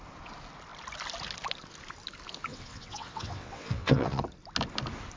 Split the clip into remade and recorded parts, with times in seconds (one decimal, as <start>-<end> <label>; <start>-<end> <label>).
0.0-2.5 recorded; 2.5-4.2 remade; 4.2-5.2 recorded

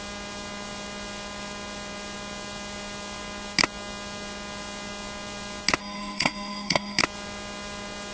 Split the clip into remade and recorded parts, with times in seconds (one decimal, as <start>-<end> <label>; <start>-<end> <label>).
0.0-5.8 recorded; 5.8-7.0 remade; 7.0-8.1 recorded

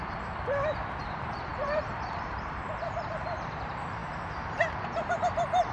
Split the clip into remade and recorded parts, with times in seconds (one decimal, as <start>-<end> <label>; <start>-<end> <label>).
0.0-1.0 recorded; 1.0-5.7 remade

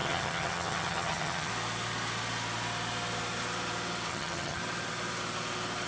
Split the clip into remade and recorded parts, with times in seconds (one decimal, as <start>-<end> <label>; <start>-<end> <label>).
0.0-1.5 remade; 1.5-4.1 recorded; 4.1-4.6 remade; 4.6-5.9 recorded

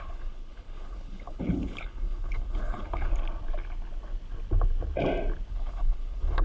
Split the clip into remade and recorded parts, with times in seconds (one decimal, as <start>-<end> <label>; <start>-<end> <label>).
0.0-3.1 remade; 3.1-5.5 recorded; 5.5-6.4 remade

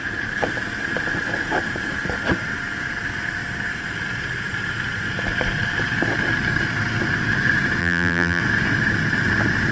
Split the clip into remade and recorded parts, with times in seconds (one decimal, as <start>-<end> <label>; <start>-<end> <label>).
0.0-7.8 recorded; 7.8-8.4 remade; 8.4-9.7 recorded

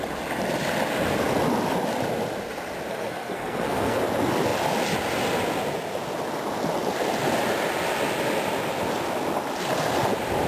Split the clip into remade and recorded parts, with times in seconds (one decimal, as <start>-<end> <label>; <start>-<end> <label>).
0.0-2.9 recorded; 2.9-4.0 remade; 4.0-10.5 recorded

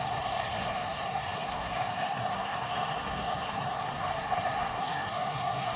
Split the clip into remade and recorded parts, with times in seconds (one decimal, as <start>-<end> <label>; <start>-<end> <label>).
0.0-5.8 remade